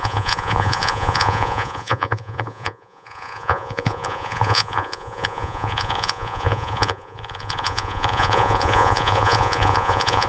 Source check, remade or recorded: remade